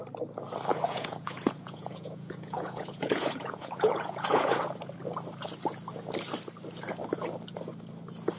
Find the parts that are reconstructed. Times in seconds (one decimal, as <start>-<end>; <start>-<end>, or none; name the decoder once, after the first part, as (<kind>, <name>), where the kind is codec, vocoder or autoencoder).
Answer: 0.7-4.6 (vocoder, Vocos)